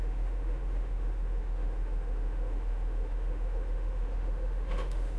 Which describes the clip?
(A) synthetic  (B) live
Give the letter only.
A